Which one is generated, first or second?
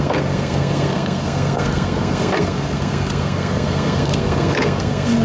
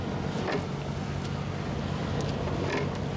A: first